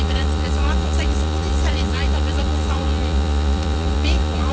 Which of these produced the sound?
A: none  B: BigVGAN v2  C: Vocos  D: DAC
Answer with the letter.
C